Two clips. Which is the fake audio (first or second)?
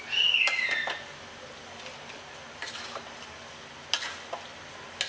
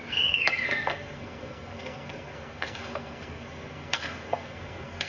second